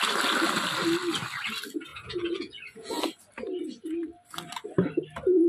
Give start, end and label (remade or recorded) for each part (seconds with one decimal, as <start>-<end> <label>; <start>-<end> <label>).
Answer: 0.0-1.9 recorded; 1.9-3.0 remade; 3.0-5.5 recorded